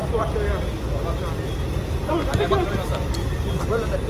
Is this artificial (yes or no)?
no